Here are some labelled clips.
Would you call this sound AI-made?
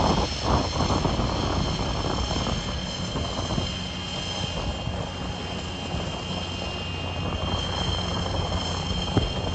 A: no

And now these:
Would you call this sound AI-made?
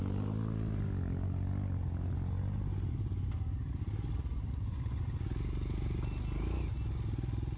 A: no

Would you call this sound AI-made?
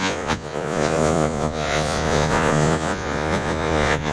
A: yes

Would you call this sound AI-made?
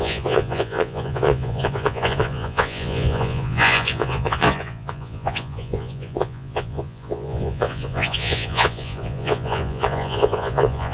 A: yes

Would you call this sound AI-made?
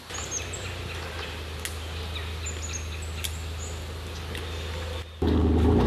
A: no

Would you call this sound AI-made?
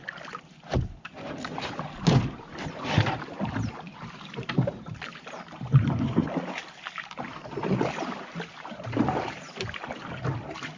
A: no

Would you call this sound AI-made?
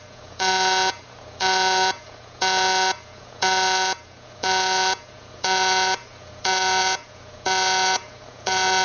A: yes